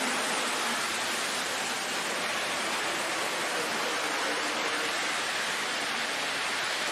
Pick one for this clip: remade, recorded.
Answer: recorded